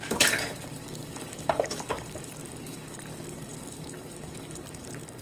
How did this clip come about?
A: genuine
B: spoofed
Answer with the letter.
B